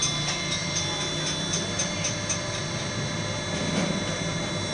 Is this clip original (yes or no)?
yes